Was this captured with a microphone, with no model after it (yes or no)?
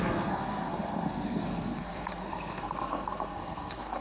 no